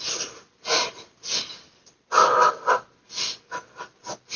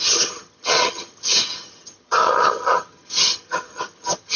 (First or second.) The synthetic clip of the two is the second